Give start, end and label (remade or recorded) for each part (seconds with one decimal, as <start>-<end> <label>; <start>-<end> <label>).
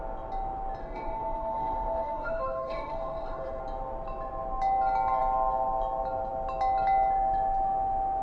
0.0-0.8 recorded; 0.8-3.6 remade; 3.6-8.2 recorded